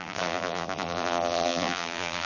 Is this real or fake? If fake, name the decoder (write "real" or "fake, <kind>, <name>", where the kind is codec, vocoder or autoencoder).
fake, vocoder, BigVGAN v2